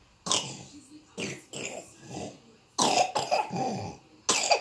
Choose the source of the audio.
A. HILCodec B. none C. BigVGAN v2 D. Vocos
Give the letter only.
B